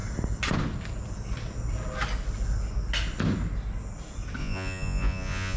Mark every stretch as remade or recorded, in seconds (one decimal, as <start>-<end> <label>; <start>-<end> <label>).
0.0-4.4 recorded; 4.4-5.6 remade